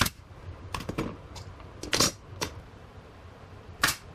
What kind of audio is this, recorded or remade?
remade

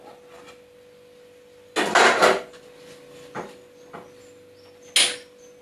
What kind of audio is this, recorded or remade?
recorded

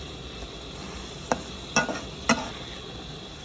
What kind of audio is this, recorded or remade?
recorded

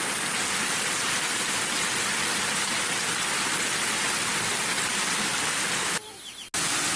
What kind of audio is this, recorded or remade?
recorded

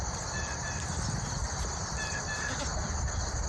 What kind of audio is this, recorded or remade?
remade